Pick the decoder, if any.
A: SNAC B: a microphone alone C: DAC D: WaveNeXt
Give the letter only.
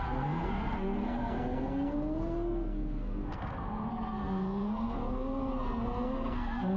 A